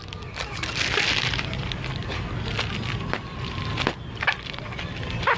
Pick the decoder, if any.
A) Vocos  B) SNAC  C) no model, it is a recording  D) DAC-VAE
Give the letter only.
C